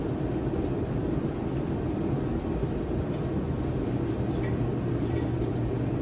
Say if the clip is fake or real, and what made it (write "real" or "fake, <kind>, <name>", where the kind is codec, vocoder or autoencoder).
fake, vocoder, BigVGAN v2